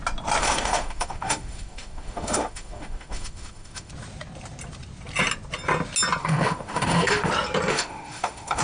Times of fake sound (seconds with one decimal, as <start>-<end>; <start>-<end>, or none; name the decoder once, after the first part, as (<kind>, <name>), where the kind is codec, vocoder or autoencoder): 0.4-3.9 (autoencoder, DAC-VAE); 6.2-7.3; 7.7-8.6